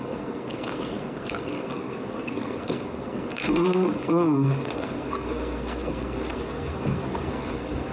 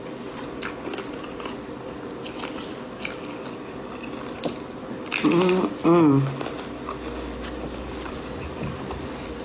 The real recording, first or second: second